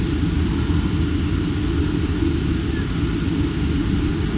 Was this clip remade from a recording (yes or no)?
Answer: no